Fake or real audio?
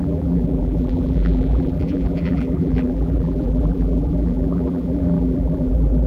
fake